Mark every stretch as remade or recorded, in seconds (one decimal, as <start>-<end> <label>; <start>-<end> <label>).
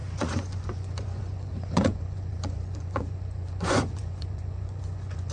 0.0-5.3 remade